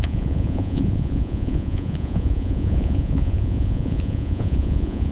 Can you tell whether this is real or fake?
fake